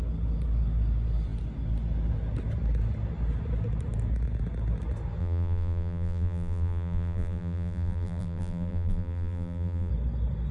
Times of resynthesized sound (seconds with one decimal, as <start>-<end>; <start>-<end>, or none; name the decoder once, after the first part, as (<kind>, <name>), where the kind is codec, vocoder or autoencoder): 5.2-9.9 (vocoder, BigVGAN v2)